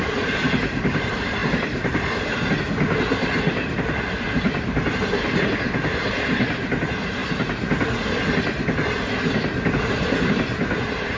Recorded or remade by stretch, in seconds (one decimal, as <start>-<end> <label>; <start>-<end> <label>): 0.0-7.2 remade; 7.2-9.7 recorded; 9.7-11.2 remade